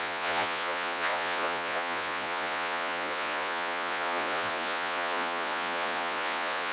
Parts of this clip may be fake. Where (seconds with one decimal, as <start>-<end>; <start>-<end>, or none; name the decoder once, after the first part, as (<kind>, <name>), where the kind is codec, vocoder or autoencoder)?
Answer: 0.0-6.7 (vocoder, Vocos)